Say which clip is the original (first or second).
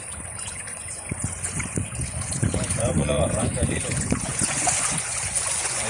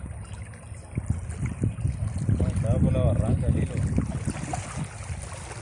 second